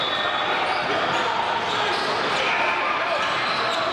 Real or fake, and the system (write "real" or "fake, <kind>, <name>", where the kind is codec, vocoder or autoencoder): real